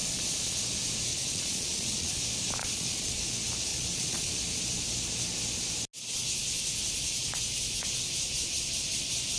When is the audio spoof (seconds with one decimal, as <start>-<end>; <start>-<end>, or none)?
0.0-0.6; 1.1-2.2; 2.6-3.2; 3.7-4.3